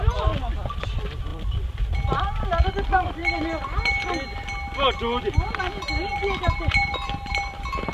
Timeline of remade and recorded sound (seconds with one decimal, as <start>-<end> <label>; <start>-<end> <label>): 0.0-3.2 remade; 3.2-5.2 recorded; 5.2-7.9 remade